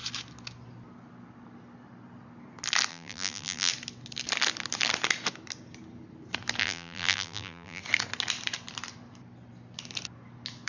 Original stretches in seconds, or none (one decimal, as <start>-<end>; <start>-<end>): 0.0-2.9; 3.7-6.6; 7.8-10.7